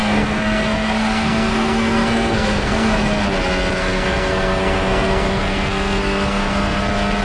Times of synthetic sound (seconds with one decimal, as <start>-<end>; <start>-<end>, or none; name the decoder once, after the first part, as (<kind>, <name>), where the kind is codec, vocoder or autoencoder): 0.0-3.2 (codec, SNAC); 3.8-6.8